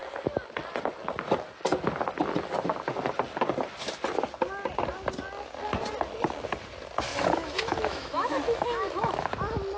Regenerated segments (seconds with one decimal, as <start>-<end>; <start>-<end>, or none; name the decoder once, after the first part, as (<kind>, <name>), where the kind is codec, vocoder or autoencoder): 7.1-9.3 (autoencoder, DAC-VAE)